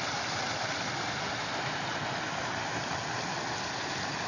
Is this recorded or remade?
recorded